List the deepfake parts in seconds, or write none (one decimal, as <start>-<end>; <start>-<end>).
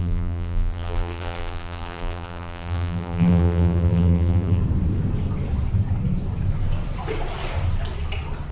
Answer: 0.0-4.6